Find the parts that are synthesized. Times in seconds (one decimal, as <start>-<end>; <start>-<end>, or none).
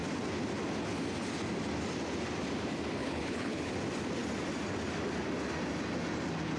3.0-3.7